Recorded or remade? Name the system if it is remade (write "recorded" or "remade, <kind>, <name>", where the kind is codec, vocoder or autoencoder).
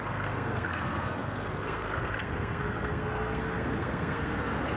remade, codec, SNAC